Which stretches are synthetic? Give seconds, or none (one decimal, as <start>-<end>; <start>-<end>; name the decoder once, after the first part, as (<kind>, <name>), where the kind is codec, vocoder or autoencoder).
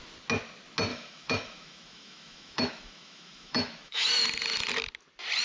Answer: 0.9-4.1 (autoencoder, DAC-VAE)